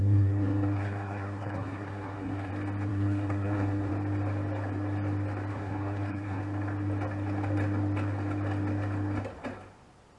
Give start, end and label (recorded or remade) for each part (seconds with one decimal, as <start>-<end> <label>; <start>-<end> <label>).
0.0-2.5 remade; 2.5-2.9 recorded; 2.9-3.9 remade; 3.9-5.5 recorded; 5.5-6.4 remade; 6.4-10.2 recorded